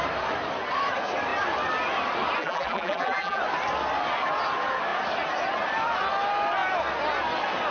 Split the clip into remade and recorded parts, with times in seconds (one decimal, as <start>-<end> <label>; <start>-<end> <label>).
0.0-2.4 recorded; 2.4-3.4 remade; 3.4-7.7 recorded